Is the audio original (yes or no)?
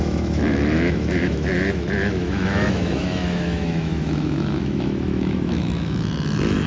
no